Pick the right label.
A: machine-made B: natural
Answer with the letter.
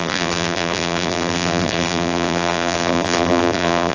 A